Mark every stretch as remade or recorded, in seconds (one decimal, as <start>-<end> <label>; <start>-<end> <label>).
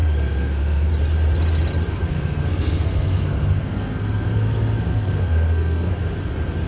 0.0-0.9 remade; 0.9-1.9 recorded; 1.9-5.9 remade; 5.9-6.7 recorded